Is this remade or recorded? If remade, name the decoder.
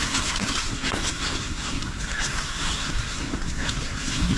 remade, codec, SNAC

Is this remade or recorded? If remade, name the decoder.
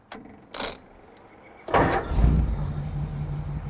recorded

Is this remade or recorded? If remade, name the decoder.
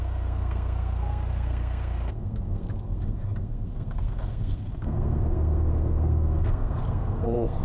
remade, codec, SNAC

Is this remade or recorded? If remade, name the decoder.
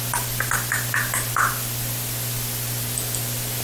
recorded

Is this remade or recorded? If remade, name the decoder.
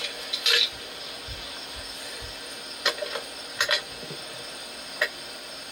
recorded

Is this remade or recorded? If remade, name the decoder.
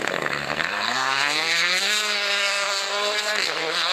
remade, codec, SNAC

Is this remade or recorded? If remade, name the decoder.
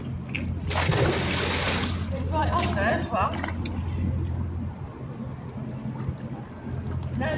recorded